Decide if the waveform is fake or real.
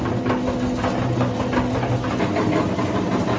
real